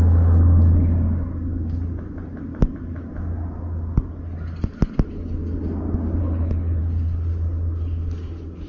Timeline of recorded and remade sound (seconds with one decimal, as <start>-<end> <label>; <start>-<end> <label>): 0.0-6.2 recorded; 6.2-6.8 remade; 6.8-8.7 recorded